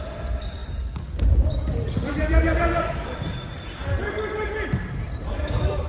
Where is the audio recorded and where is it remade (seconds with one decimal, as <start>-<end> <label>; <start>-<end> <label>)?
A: 0.0-5.9 recorded